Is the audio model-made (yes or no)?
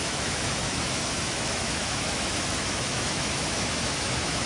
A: yes